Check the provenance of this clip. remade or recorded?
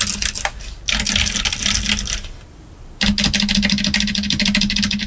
recorded